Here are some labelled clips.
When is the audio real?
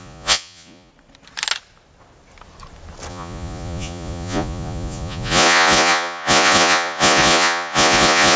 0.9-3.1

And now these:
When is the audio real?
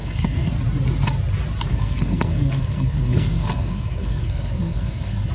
0.5-1.7